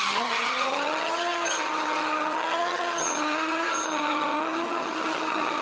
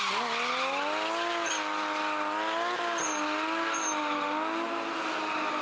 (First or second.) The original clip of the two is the second